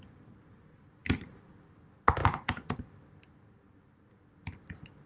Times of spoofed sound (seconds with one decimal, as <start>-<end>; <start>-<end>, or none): 1.0-1.5; 2.2-4.1